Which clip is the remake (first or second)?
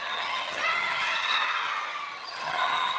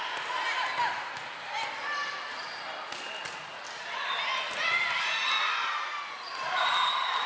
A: first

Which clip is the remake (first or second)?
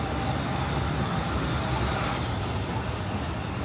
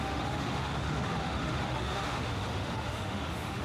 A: second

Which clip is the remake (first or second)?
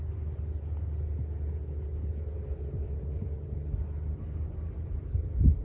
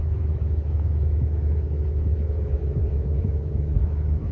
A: second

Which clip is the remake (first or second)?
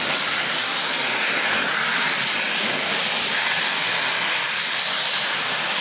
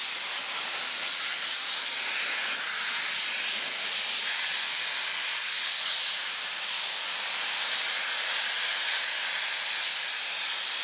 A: first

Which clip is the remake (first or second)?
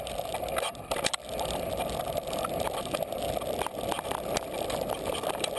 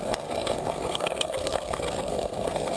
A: second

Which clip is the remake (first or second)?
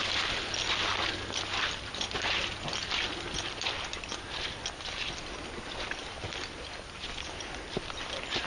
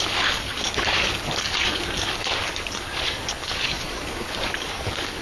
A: second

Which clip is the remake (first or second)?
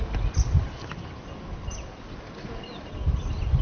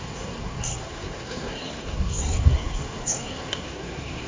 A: second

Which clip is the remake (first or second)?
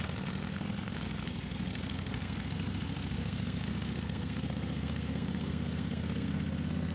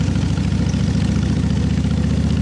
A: first